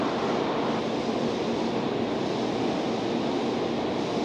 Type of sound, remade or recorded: recorded